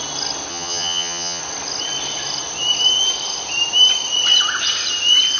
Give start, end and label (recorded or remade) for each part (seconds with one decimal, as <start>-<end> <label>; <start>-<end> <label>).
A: 0.0-0.5 recorded; 0.5-1.4 remade; 1.4-5.4 recorded